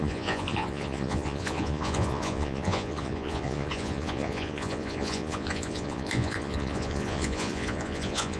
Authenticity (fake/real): fake